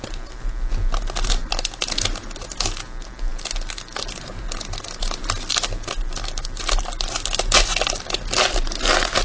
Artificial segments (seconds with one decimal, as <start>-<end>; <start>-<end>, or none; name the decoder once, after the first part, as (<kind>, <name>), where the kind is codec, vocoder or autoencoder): none